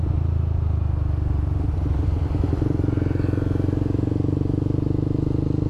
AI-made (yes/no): no